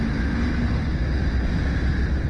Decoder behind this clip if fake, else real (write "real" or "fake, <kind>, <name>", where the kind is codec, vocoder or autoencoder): real